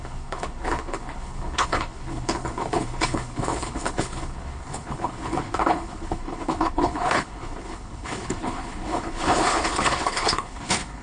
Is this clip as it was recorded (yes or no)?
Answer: no